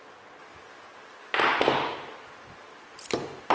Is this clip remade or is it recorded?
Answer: recorded